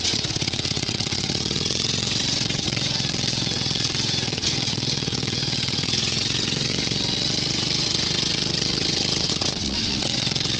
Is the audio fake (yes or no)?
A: yes